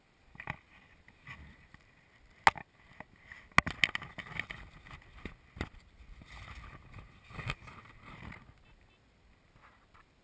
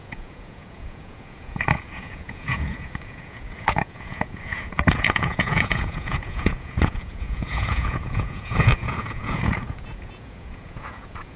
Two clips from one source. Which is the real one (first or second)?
first